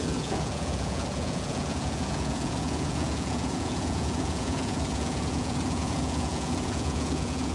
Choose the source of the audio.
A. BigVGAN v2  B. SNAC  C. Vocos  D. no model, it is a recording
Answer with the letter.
C